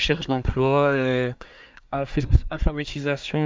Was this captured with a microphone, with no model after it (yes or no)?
no